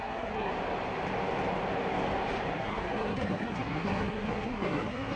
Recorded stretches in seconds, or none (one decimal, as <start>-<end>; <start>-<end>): 0.5-2.5